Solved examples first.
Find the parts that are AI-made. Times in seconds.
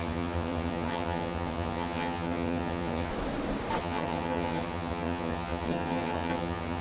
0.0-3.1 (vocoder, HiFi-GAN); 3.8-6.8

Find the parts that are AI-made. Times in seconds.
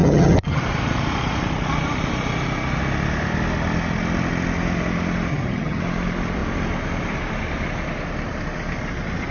0.0-0.6 (vocoder, HiFi-GAN); 5.3-5.8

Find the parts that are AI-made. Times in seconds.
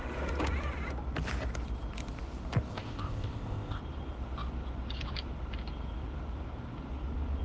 2.7-3.8 (codec, ZipCodec)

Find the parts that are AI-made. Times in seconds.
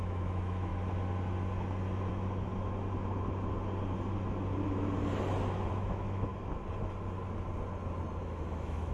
0.0-0.7 (autoencoder, DAC-VAE); 2.1-2.5; 5.7-6.3; 8.2-8.9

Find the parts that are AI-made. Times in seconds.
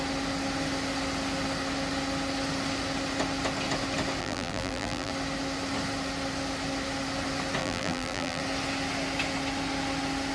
4.2-5.1 (vocoder, BigVGAN v2); 7.6-8.4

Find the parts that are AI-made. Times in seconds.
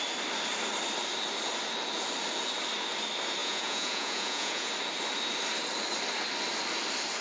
3.4-4.7 (vocoder, Vocos)